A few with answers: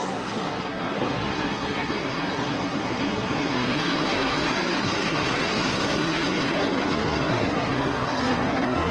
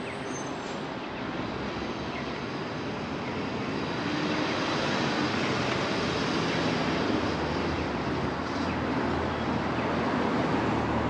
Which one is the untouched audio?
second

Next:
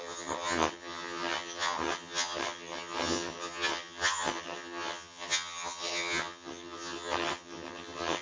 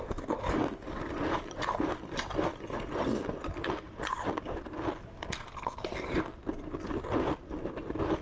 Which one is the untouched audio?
second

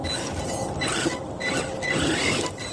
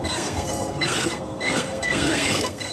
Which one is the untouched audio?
first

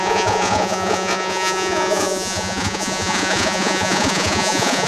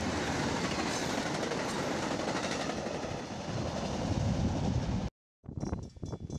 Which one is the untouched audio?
second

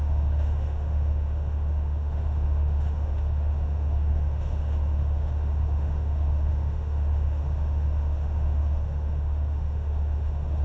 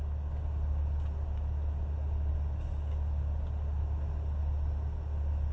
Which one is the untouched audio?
second